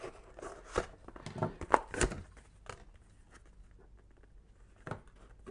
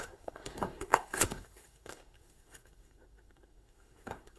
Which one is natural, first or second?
first